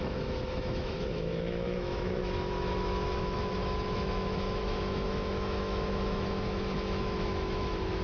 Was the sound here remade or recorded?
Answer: remade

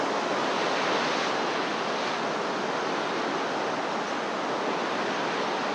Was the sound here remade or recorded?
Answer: recorded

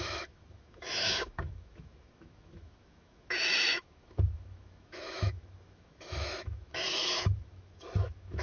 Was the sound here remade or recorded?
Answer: remade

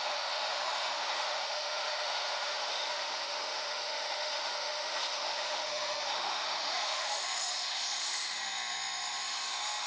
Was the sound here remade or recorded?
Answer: remade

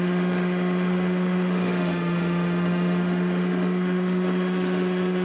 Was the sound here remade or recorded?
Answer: remade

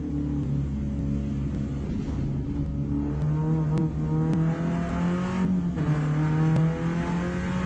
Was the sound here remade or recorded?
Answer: recorded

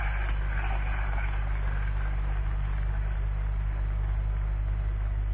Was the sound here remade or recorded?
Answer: recorded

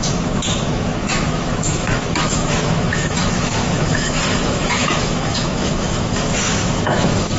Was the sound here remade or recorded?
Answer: remade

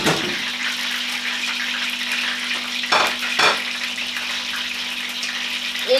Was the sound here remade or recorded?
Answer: recorded